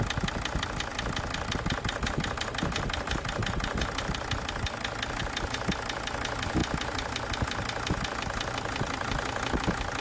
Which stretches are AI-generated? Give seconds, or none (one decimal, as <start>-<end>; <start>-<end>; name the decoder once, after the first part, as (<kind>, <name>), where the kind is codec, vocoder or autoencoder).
none